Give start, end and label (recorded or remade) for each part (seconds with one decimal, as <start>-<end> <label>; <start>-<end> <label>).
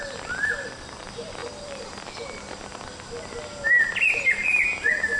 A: 0.0-1.4 recorded; 1.4-2.1 remade; 2.1-5.2 recorded